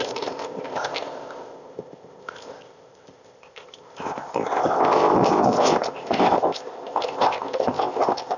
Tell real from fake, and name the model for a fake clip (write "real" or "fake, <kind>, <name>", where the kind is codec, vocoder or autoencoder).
fake, codec, ZipCodec